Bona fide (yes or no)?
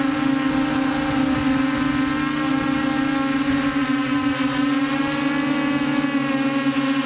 yes